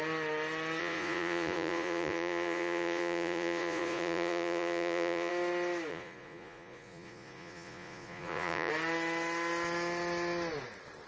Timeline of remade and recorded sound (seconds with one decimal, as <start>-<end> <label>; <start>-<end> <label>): 0.0-0.8 recorded; 0.8-5.3 remade; 5.3-5.9 recorded; 5.9-8.7 remade; 8.7-11.1 recorded